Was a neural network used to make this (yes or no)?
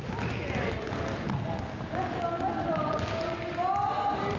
no